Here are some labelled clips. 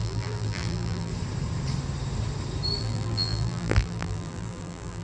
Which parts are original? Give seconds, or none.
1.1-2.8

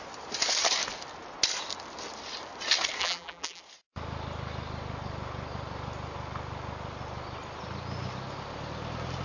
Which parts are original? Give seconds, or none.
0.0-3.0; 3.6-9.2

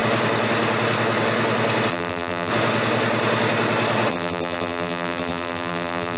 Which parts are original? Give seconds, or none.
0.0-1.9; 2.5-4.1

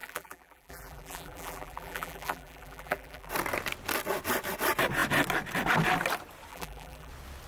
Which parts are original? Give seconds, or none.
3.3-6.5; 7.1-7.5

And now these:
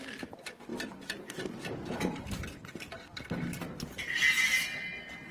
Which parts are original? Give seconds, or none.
0.0-0.7; 2.4-5.3

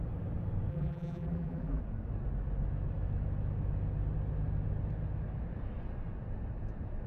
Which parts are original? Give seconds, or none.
0.0-0.7; 1.8-7.1

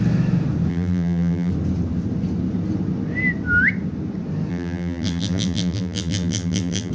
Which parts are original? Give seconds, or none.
0.0-0.7; 1.5-4.5

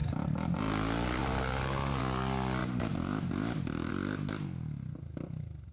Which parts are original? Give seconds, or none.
0.6-1.2; 2.0-2.6; 3.9-5.7